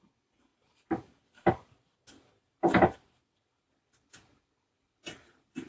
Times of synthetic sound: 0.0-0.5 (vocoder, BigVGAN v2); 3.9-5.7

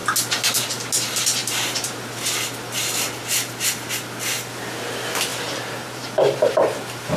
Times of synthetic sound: 1.4-2.1 (vocoder, BigVGAN v2); 5.3-6.5

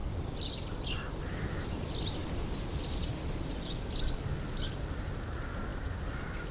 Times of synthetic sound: 0.0-6.5 (vocoder, BigVGAN v2)

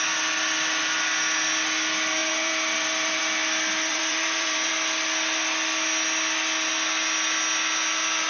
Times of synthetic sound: 2.2-3.2 (vocoder, BigVGAN v2); 3.9-4.7